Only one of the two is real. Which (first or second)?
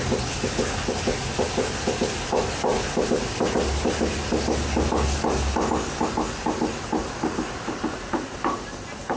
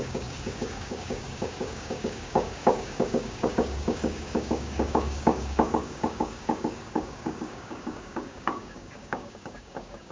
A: first